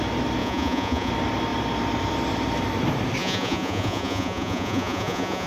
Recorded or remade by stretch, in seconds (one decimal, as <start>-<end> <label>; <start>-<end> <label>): 0.0-0.4 recorded; 0.4-1.1 remade; 1.1-3.2 recorded; 3.2-5.5 remade